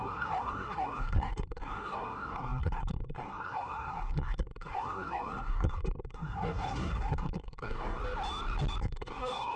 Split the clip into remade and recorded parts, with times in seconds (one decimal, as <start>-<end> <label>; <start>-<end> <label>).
0.0-8.0 remade; 8.0-8.8 recorded; 8.8-9.6 remade